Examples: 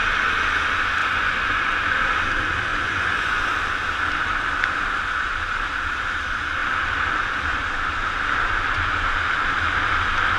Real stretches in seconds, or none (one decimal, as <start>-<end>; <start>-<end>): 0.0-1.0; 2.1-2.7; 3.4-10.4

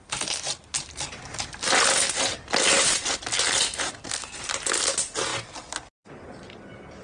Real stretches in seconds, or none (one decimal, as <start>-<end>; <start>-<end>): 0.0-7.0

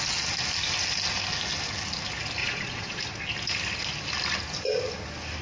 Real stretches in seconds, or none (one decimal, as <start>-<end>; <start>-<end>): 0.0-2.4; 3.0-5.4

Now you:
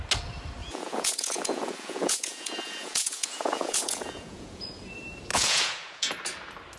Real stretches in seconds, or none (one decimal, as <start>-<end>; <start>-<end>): 0.0-0.6; 4.7-5.3; 6.1-6.8

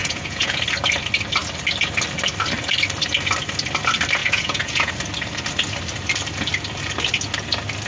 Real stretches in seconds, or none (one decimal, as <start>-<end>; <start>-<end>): 0.6-4.2; 4.9-7.9